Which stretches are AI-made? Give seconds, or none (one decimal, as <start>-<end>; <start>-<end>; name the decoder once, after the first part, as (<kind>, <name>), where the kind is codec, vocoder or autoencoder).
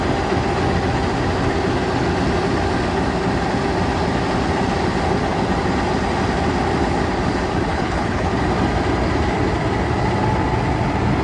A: 7.7-8.3 (codec, HILCodec)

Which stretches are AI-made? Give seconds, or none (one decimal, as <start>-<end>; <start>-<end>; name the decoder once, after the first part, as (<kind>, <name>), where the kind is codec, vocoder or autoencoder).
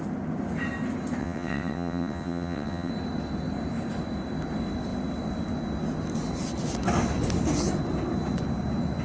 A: 1.2-2.9 (vocoder, WaveNeXt)